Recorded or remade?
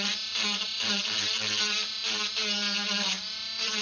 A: recorded